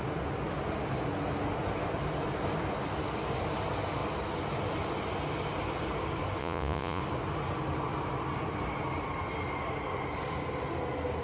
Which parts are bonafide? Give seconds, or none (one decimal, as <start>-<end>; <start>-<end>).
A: 0.0-6.4; 7.0-11.2